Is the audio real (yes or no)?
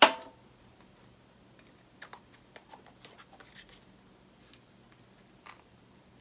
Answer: yes